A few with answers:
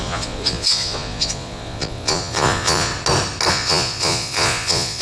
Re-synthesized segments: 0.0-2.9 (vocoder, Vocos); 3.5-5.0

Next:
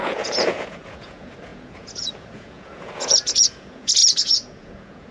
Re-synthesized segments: 0.0-5.1 (vocoder, Vocos)

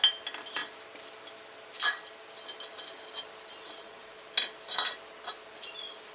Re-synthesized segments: 3.5-4.0 (vocoder, Vocos)

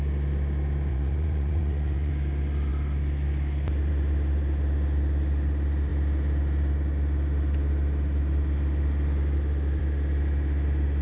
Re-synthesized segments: 0.9-2.1 (vocoder, Vocos)

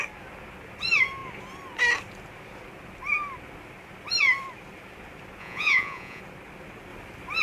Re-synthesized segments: 5.4-6.2 (vocoder, Vocos)

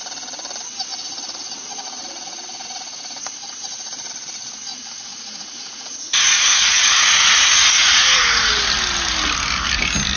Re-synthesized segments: 0.9-4.1 (vocoder, Vocos); 4.7-8.5